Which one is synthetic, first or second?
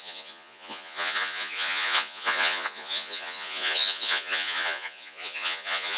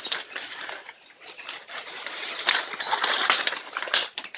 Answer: first